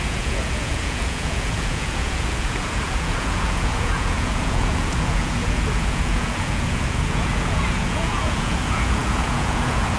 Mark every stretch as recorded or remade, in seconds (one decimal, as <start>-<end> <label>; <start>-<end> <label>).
0.0-10.0 remade